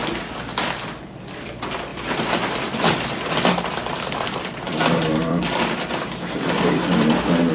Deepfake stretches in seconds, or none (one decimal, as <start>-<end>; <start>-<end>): 1.9-5.9